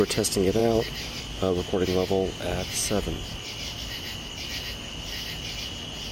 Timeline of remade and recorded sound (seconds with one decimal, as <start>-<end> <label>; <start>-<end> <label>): 0.0-6.1 recorded